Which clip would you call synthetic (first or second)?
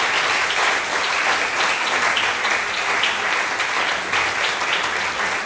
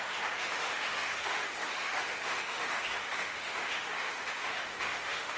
second